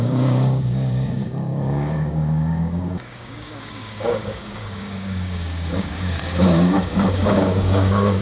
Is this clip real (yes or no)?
no